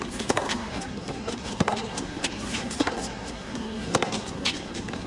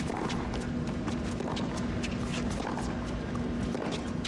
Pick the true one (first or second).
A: second